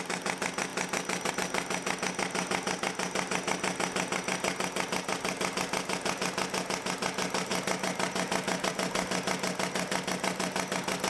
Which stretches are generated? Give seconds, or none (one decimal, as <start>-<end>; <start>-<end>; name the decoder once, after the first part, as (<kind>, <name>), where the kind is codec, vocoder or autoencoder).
none